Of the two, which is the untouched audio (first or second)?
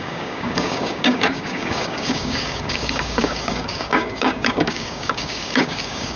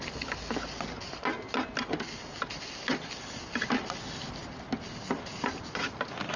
second